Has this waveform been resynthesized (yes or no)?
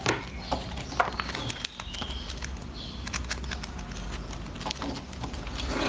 no